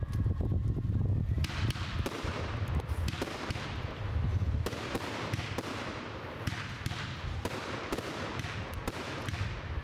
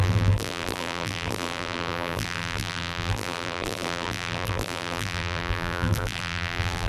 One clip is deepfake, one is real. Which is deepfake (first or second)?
second